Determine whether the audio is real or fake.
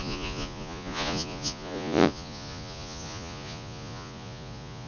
fake